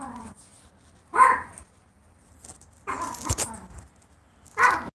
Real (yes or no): yes